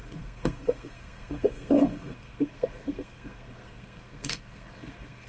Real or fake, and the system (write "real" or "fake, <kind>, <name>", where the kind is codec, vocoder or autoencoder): fake, codec, SNAC